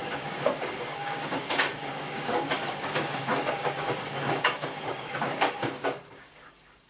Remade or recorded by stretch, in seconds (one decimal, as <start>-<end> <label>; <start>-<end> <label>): 0.0-6.9 remade